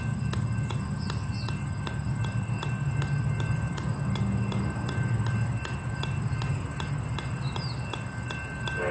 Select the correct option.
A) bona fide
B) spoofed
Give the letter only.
A